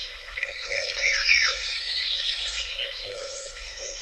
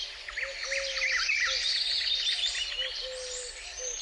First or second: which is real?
second